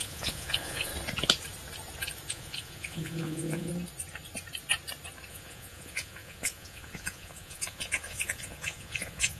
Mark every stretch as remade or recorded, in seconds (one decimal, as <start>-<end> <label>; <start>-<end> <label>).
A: 0.0-0.9 remade; 0.9-2.3 recorded; 2.3-3.7 remade; 3.7-5.3 recorded; 5.3-9.4 remade